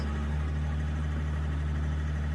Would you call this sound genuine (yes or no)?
yes